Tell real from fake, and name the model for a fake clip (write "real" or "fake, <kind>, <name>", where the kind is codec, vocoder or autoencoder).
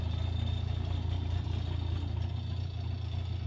real